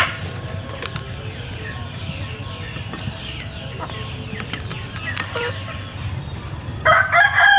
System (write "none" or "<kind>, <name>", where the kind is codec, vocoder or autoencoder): none